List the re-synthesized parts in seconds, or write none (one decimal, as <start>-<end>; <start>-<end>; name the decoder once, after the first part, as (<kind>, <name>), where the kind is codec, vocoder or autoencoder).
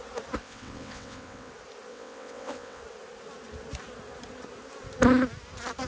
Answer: 0.4-1.5 (vocoder, WaveNeXt); 1.9-2.8